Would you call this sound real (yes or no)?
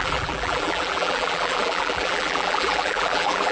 no